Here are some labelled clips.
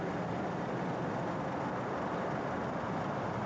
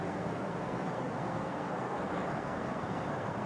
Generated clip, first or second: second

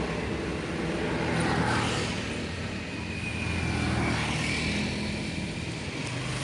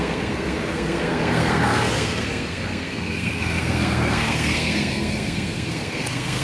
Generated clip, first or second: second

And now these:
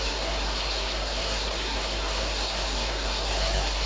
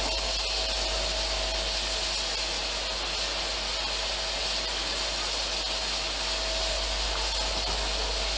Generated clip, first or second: first